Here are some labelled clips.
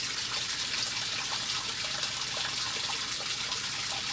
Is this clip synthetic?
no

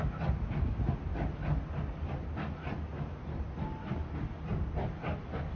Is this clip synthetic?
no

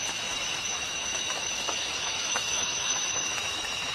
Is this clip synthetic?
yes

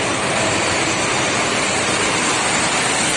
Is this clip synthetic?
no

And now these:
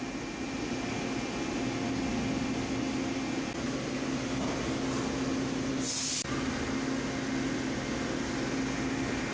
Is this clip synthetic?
no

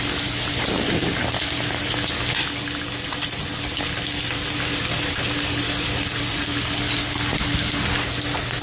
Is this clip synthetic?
no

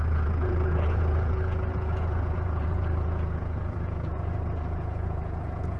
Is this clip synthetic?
yes